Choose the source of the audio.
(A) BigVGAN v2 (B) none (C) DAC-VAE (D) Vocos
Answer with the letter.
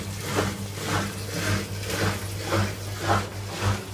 B